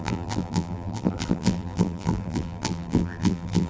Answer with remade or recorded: remade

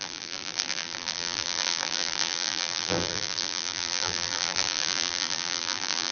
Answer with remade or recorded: remade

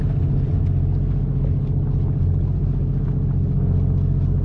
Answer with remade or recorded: recorded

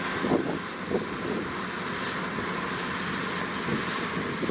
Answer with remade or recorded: recorded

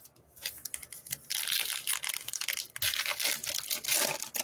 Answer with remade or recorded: recorded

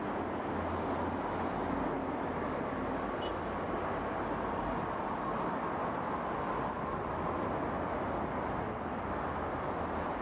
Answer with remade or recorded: recorded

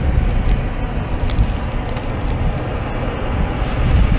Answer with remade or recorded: recorded